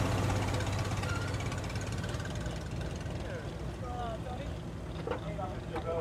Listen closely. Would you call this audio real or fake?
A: fake